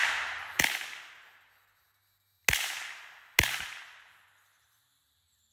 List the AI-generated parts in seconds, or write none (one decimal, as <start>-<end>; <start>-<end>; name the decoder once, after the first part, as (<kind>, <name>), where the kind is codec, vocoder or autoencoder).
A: none